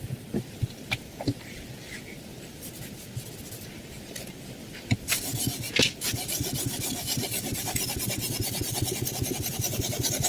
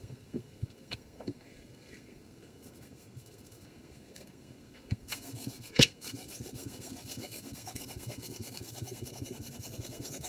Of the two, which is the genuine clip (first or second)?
first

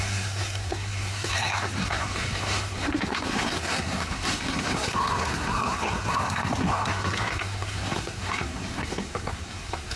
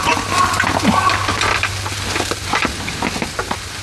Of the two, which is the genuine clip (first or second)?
second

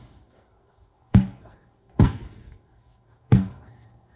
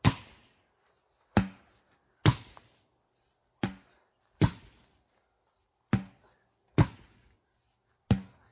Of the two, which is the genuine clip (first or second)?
second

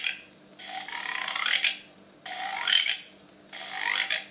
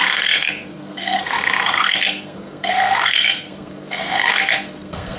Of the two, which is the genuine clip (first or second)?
first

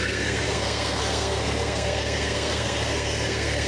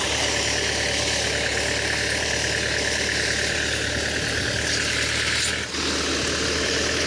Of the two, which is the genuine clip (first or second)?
second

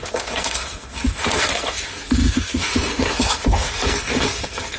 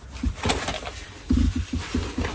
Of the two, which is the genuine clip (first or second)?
second